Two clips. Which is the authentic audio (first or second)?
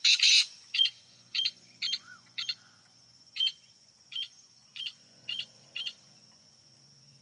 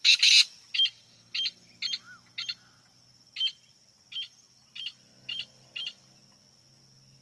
second